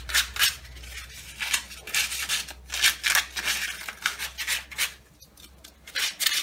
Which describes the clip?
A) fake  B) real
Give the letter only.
B